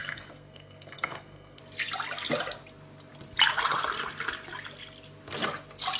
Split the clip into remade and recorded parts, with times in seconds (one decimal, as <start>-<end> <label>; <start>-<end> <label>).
0.0-1.6 remade; 1.6-6.0 recorded